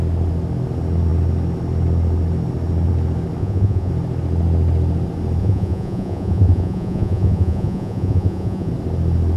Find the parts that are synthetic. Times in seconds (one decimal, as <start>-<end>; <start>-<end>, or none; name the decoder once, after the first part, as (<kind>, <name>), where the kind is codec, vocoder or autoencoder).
3.4-3.9 (vocoder, Vocos); 5.4-8.7